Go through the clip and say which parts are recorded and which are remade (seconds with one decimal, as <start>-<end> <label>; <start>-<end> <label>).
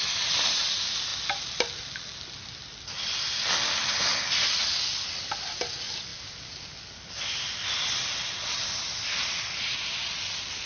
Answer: 0.0-10.7 recorded